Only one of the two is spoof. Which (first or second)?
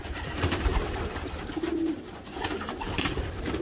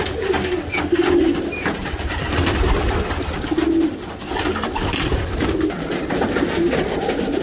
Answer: first